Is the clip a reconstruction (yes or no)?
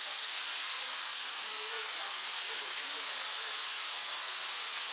yes